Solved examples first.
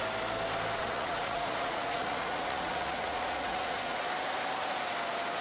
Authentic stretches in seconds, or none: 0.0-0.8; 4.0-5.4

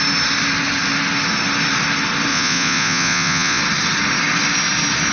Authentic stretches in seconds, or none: 0.0-2.3; 3.6-5.1

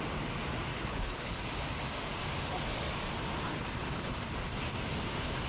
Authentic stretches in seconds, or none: 0.0-0.7; 1.3-5.5

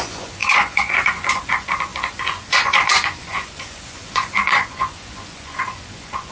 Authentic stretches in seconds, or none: none